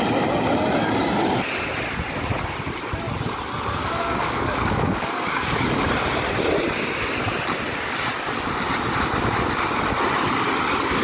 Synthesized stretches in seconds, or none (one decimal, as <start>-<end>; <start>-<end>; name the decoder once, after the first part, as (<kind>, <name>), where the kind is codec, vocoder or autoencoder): 3.8-5.8 (codec, DAC)